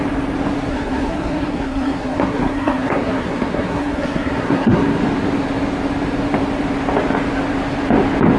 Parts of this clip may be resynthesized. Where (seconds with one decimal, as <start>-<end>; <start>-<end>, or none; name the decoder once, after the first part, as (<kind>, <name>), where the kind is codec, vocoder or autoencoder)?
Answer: 0.7-5.0 (codec, SNAC)